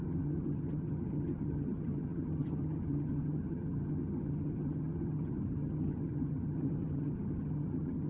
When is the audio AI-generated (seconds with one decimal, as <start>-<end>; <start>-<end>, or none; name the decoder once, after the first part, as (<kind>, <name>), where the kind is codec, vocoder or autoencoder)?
0.0-8.1 (vocoder, HiFi-GAN)